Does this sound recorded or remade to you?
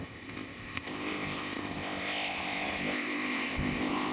remade